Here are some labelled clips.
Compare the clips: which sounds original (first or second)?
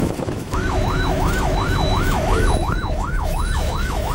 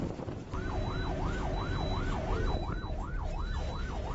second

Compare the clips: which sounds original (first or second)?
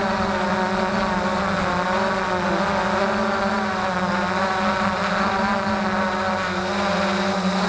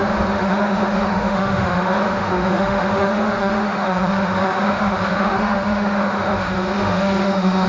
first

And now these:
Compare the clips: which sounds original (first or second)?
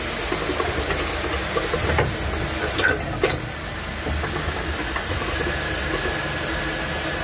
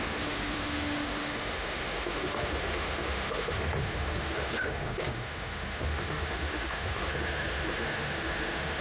first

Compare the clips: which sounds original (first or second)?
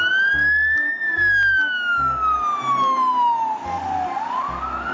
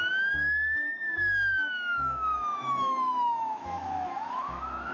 first